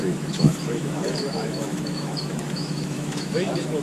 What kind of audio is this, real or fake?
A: fake